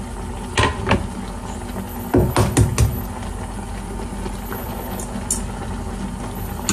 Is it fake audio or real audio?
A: real